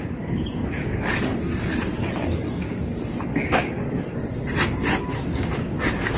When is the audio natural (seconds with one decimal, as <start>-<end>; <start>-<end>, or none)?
1.3-2.5; 4.2-5.0